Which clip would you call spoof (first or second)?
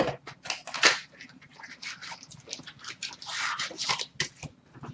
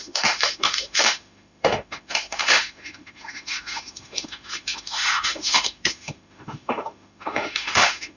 second